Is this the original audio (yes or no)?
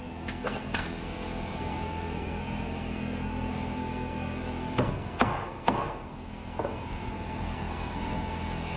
no